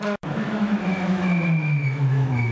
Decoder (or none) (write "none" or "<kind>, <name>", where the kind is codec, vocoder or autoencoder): autoencoder, DAC-VAE